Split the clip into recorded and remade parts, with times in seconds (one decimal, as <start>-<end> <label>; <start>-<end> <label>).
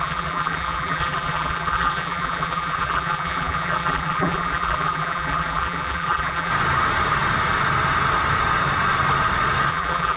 0.0-6.5 remade; 6.5-9.7 recorded; 9.7-10.2 remade